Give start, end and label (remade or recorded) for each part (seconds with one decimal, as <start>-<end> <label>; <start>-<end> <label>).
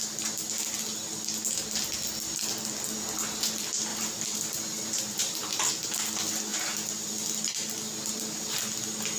0.0-3.9 recorded; 3.9-5.7 remade; 5.7-6.5 recorded; 6.5-7.1 remade; 7.1-9.2 recorded